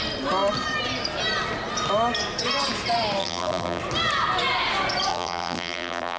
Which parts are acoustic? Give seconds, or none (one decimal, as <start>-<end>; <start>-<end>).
0.0-3.2; 3.8-5.1